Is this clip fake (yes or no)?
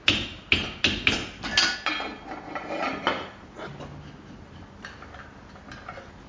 no